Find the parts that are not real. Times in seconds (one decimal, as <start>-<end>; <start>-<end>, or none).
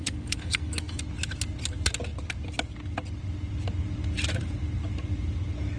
0.0-1.0